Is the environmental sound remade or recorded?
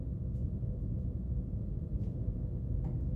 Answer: recorded